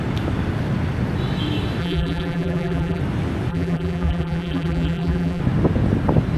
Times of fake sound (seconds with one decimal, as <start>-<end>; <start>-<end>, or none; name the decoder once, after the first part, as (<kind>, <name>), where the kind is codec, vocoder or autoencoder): 1.8-3.0 (vocoder, BigVGAN v2); 3.5-5.4